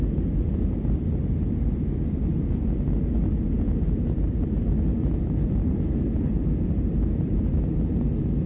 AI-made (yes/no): no